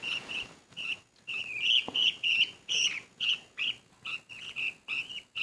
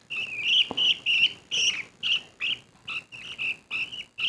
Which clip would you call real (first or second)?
second